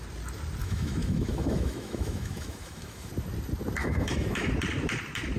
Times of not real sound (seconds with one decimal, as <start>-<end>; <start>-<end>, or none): 0.6-3.1; 3.8-4.5